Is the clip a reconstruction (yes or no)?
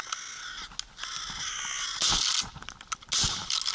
no